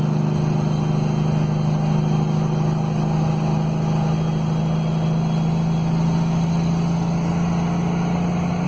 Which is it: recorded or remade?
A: recorded